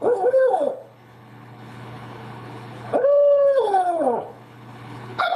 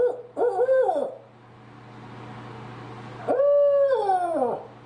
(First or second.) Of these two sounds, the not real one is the first